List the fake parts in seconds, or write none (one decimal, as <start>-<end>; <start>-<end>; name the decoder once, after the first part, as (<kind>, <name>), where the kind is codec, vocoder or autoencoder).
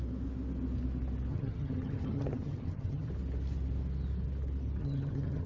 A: 1.3-3.1 (vocoder, HiFi-GAN); 4.8-5.5